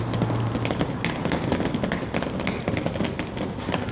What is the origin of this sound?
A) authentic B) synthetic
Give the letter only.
A